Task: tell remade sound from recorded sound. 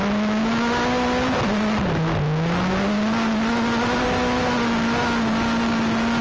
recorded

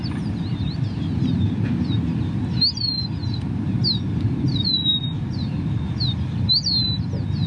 recorded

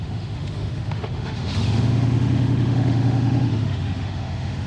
remade